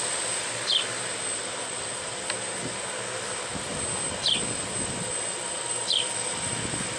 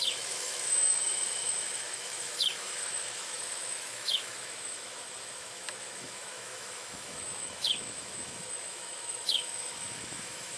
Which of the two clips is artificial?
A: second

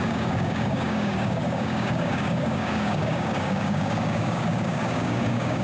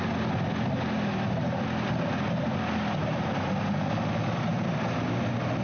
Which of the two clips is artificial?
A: first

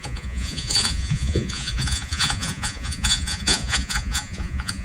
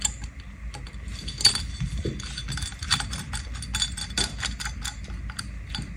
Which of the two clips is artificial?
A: first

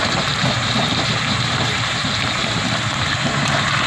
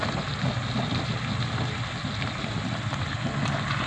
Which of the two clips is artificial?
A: first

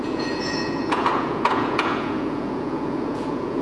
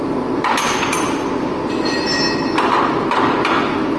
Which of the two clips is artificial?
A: first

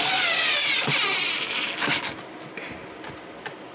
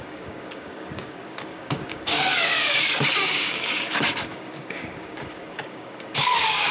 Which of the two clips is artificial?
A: second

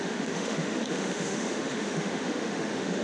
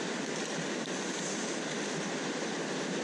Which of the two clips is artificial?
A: first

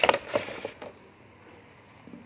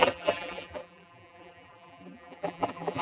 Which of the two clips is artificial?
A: second